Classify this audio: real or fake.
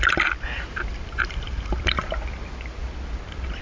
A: real